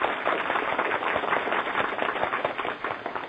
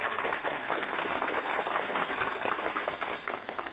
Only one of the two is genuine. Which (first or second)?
first